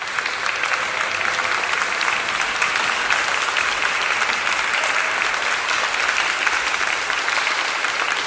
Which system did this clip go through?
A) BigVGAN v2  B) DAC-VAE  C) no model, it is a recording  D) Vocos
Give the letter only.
C